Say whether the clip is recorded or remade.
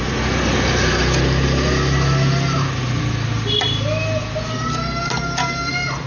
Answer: recorded